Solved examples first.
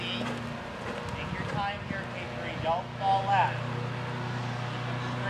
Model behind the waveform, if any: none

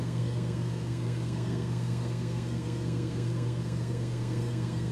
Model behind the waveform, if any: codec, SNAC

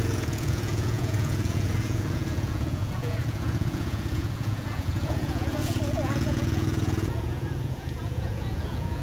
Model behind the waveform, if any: vocoder, Vocos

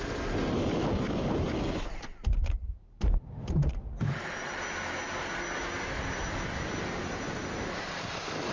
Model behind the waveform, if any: none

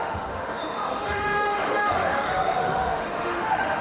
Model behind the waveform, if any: autoencoder, DAC-VAE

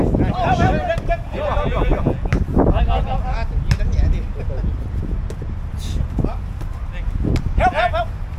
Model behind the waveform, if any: none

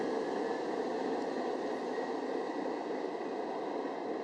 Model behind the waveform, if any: none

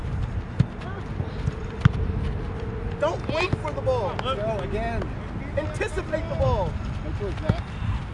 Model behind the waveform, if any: none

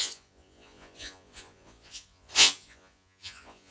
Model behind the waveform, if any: vocoder, Vocos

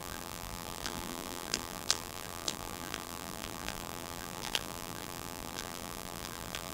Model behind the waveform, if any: vocoder, BigVGAN v2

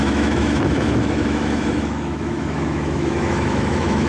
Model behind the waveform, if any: autoencoder, DAC-VAE